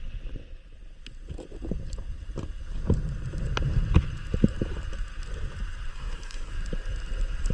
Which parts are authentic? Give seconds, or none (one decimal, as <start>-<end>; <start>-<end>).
0.0-5.9; 6.5-7.5